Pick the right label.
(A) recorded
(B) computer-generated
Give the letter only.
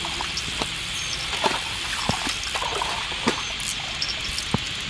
A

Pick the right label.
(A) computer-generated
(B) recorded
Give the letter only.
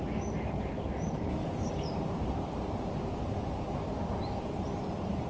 A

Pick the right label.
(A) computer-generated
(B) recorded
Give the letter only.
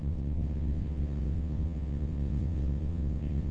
A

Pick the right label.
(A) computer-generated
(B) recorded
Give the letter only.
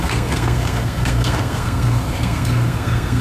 A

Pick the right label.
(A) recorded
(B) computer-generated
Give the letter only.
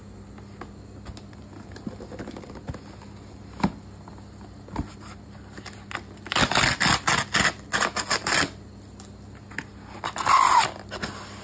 A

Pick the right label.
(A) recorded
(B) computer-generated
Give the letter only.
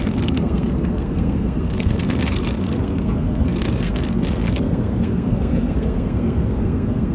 B